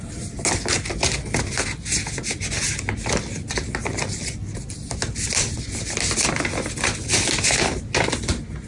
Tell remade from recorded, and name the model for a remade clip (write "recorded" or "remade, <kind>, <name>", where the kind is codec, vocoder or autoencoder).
recorded